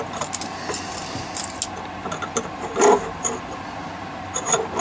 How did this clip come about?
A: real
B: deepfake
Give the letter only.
A